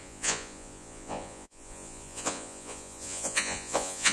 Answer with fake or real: fake